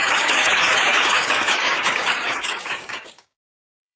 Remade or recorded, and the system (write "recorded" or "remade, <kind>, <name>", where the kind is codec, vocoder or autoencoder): remade, codec, DAC